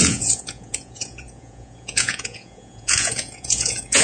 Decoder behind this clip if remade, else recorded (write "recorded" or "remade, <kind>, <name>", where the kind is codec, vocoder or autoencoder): remade, vocoder, Vocos